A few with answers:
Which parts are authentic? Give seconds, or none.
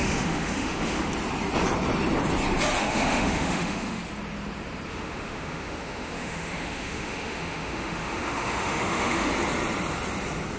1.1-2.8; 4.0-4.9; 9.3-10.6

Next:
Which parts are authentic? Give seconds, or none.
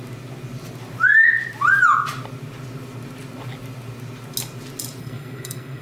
0.0-5.0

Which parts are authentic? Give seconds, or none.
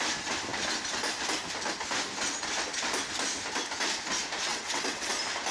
0.0-4.5; 5.1-5.5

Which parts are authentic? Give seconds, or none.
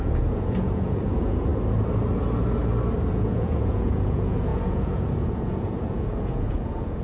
1.5-3.1